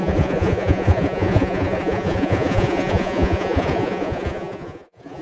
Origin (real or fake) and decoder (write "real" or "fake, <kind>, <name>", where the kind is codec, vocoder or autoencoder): fake, vocoder, Vocos